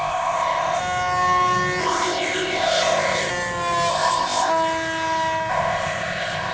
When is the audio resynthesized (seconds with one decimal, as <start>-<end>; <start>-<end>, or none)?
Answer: 0.0-0.8; 1.8-3.3; 3.9-4.5; 5.5-6.5